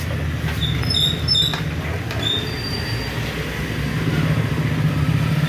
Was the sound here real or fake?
real